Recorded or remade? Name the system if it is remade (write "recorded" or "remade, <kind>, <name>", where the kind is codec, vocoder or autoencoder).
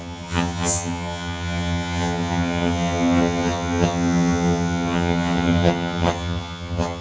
remade, vocoder, HiFi-GAN